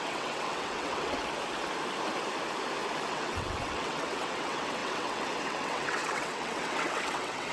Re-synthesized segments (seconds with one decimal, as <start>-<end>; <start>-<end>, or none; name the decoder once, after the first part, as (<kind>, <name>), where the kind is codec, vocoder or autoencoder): 0.0-1.2 (vocoder, WaveNeXt); 3.1-7.5